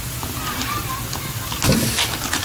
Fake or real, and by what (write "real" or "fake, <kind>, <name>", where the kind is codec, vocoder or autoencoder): real